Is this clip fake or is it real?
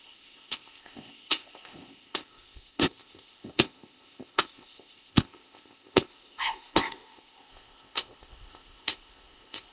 fake